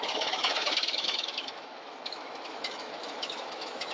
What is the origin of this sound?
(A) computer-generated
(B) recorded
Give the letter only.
A